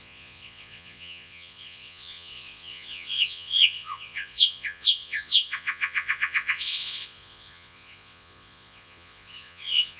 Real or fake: fake